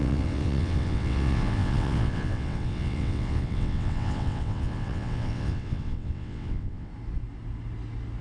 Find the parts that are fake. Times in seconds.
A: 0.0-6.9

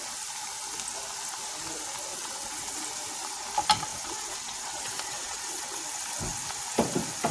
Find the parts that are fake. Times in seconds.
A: 2.1-2.8; 3.9-5.8

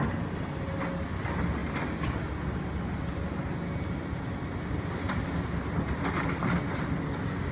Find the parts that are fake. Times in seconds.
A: none

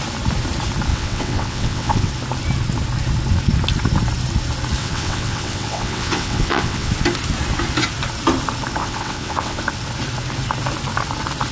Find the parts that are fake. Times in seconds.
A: 0.9-2.1; 4.8-6.9; 8.8-9.6

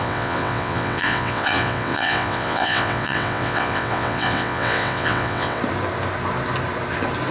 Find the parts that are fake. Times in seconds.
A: 0.0-5.6

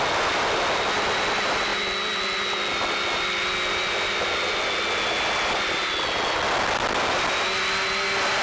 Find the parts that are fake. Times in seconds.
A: none

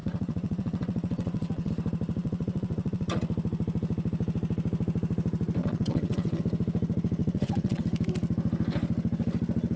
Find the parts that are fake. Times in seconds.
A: 0.0-1.7; 2.2-3.2; 5.6-6.4; 7.2-7.8

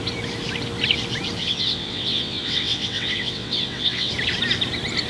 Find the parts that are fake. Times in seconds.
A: 1.4-4.1